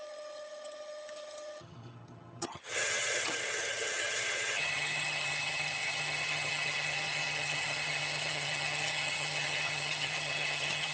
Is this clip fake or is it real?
fake